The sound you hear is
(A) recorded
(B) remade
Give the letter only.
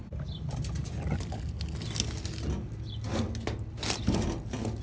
A